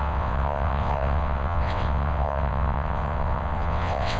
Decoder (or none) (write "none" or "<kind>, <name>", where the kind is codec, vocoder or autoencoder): vocoder, WaveNeXt